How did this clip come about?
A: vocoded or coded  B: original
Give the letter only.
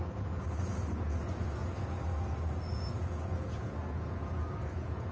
A